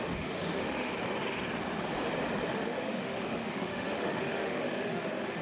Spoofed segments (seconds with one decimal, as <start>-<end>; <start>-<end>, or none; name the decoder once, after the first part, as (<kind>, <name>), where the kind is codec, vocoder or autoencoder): 0.0-0.9 (autoencoder, DAC-VAE); 2.5-5.4